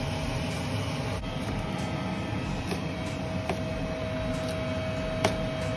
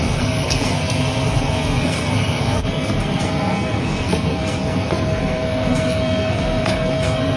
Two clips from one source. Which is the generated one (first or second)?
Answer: second